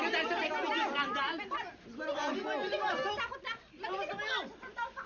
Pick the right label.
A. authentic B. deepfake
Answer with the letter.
A